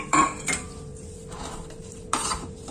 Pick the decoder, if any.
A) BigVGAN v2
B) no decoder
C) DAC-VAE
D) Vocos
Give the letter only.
A